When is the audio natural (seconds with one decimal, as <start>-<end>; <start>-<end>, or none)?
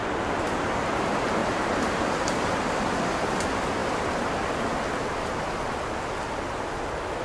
0.0-1.4; 2.4-3.8; 4.3-7.2